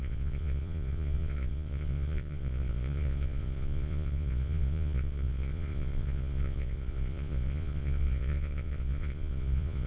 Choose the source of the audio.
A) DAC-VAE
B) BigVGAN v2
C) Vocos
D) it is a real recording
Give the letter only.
C